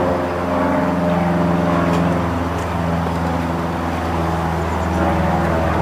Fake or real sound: real